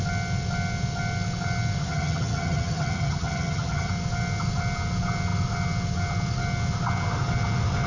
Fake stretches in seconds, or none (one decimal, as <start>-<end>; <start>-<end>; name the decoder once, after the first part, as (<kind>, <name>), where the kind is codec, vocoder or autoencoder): 1.8-3.9 (vocoder, HiFi-GAN)